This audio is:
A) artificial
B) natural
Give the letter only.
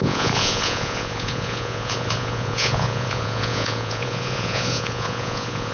A